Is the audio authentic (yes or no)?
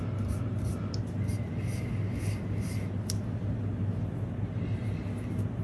yes